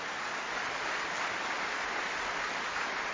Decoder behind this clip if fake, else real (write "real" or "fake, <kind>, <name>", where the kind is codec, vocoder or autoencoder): real